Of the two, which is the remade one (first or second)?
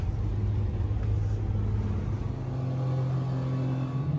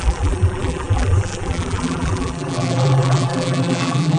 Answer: second